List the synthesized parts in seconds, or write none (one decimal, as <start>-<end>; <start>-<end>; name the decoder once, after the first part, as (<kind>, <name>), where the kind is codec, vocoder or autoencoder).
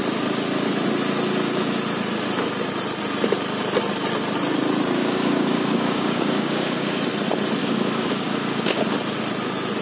5.0-7.0 (codec, DAC); 7.6-8.8